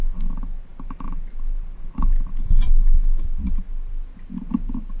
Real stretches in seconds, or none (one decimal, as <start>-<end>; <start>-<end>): 0.0-5.0